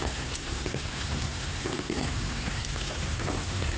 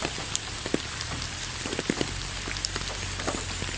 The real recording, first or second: second